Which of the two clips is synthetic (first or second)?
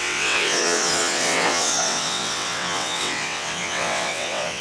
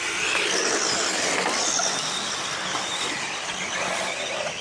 first